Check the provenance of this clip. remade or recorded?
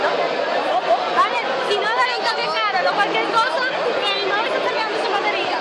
recorded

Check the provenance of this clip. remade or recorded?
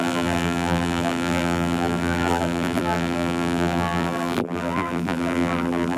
remade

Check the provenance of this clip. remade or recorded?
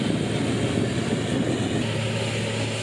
recorded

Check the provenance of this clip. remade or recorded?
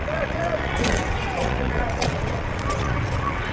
remade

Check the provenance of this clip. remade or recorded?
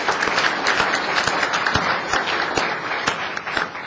remade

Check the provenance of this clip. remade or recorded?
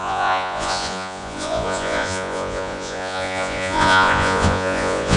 remade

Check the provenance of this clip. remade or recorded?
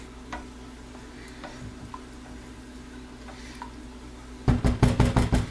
recorded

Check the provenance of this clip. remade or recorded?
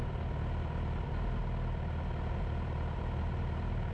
recorded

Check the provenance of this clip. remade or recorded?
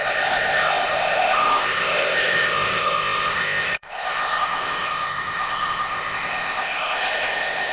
remade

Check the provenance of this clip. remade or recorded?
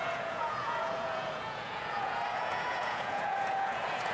remade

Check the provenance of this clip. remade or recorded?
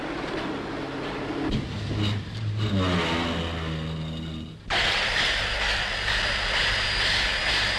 recorded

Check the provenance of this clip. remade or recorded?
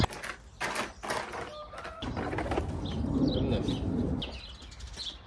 recorded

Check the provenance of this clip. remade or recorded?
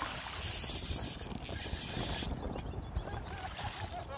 recorded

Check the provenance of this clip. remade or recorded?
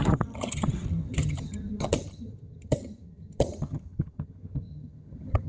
remade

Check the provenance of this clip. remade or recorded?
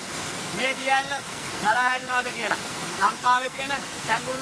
remade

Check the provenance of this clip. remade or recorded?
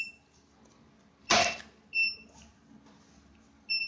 recorded